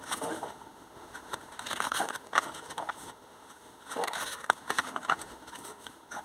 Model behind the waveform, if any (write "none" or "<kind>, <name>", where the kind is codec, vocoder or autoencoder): autoencoder, DAC-VAE